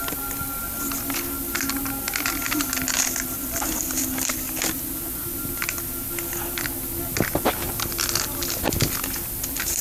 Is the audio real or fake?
real